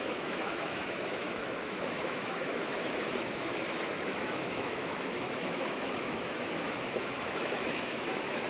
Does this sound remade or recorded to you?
remade